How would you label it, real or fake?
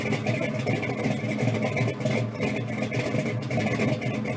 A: real